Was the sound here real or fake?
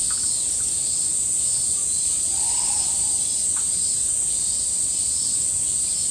real